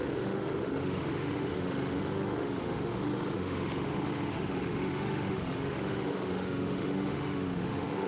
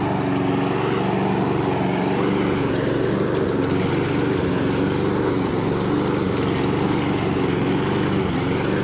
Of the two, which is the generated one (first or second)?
first